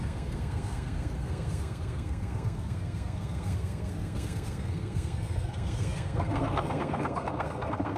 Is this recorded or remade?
remade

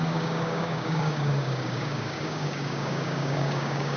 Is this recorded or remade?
remade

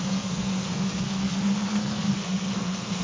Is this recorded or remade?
remade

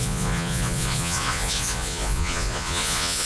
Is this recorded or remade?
remade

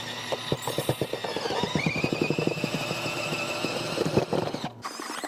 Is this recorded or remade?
recorded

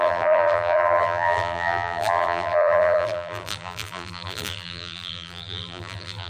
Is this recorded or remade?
remade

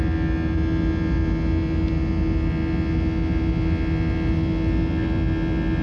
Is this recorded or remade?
recorded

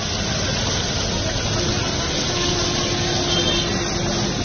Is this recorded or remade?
recorded